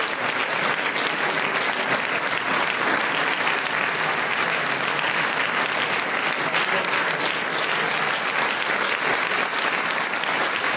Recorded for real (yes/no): yes